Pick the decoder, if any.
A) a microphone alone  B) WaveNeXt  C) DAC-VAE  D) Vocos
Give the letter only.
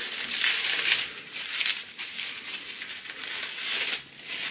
A